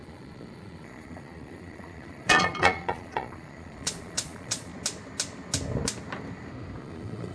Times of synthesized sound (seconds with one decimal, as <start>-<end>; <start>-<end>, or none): 0.0-4.7; 6.8-7.3